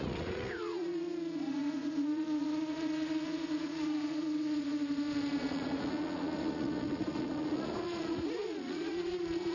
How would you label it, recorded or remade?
remade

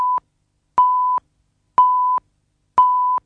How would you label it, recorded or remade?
recorded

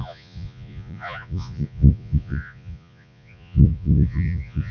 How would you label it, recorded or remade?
remade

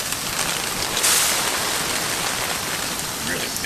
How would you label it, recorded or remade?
recorded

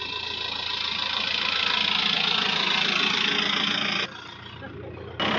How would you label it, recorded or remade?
recorded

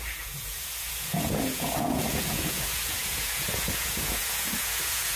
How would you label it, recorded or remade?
remade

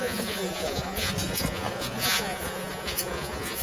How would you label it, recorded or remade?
remade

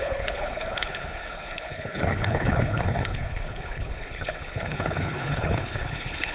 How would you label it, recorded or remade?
remade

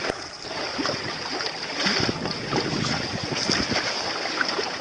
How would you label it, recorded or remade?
recorded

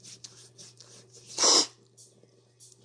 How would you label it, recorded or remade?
recorded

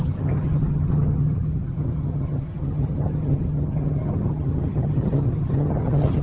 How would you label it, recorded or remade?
remade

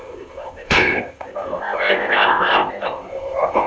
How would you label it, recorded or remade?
remade